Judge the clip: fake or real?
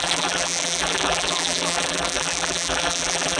fake